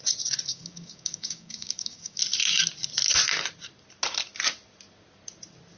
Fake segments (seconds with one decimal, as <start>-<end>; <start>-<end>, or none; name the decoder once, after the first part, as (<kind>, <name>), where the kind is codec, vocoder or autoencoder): 0.5-2.2 (codec, DAC)